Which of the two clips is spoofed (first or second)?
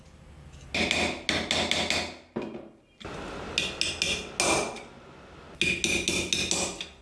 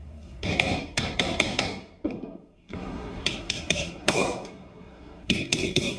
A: second